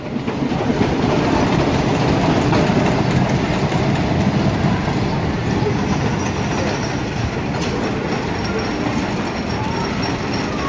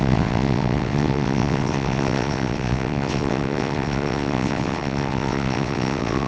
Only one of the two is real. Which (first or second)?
first